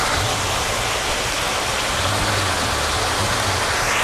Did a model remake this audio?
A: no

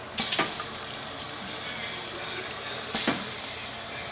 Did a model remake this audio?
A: no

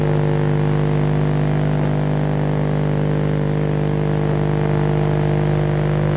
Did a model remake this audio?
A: no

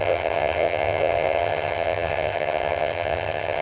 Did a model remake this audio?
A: yes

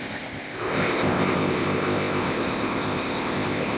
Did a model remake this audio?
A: yes